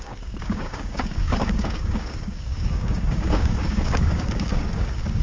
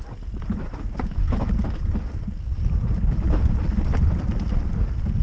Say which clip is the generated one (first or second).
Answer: first